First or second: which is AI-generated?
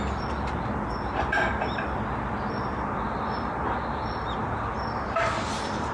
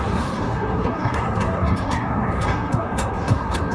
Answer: second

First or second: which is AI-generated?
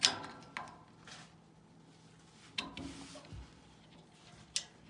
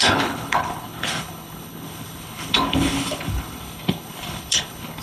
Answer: second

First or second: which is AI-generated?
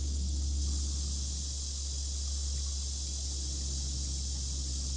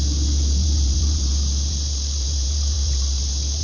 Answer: second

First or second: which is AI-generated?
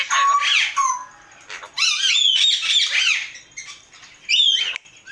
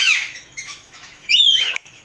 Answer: second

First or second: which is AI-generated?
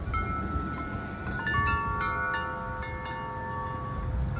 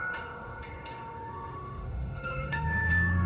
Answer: second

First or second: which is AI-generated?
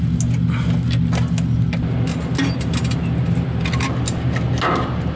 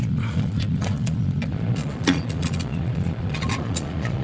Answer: second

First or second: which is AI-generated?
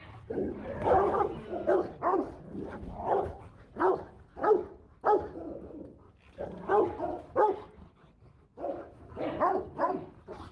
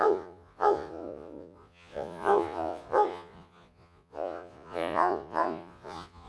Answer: second